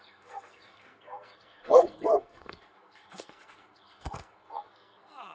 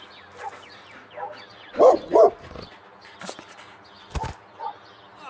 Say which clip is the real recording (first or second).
second